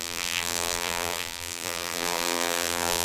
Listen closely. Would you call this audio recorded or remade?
remade